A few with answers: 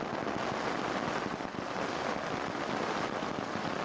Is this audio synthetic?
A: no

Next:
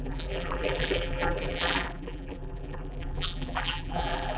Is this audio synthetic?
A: yes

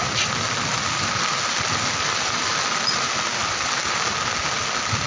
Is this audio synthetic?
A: no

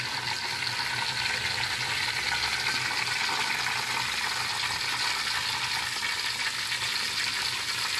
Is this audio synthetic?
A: no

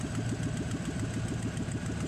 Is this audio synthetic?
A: no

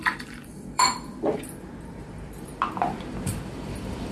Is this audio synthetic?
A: yes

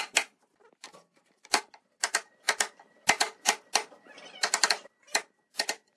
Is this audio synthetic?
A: yes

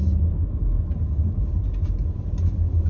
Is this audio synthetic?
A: no